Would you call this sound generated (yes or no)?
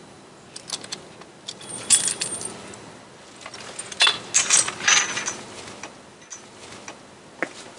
no